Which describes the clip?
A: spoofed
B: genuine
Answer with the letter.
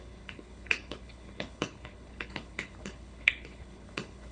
A